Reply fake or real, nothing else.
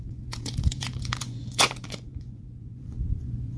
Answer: fake